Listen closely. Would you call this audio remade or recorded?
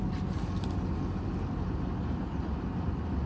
recorded